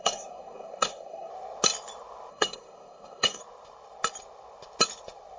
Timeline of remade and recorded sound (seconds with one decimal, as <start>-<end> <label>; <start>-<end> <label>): 0.0-1.3 remade; 1.3-2.3 recorded; 2.3-3.4 remade; 3.4-5.4 recorded